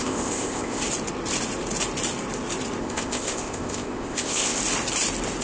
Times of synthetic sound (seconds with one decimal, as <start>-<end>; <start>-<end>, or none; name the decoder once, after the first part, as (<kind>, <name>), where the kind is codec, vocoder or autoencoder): 0.0-0.8 (codec, ZipCodec); 2.8-4.6